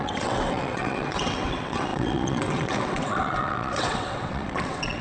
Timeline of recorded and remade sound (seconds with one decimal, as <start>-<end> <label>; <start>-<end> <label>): 0.0-5.0 remade